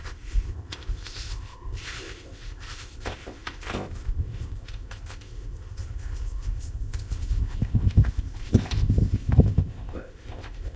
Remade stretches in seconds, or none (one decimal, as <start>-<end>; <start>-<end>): 0.0-10.8